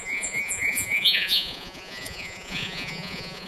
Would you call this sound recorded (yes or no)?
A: no